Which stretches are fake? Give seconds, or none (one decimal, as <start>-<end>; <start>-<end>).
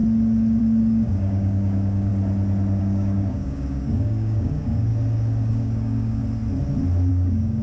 0.6-2.1; 2.8-4.9; 5.5-6.2; 7.1-7.6